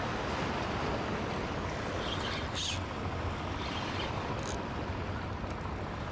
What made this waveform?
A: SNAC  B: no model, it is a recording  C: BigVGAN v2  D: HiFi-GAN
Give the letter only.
B